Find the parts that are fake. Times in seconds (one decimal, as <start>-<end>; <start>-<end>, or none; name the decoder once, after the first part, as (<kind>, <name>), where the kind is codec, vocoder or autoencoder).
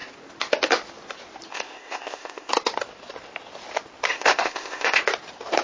1.5-2.5 (codec, ZipCodec); 4.1-5.0